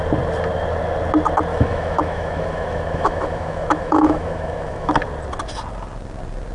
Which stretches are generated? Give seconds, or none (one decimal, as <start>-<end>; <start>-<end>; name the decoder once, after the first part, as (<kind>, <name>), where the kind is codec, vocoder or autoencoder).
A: 1.5-4.9 (autoencoder, DAC-VAE)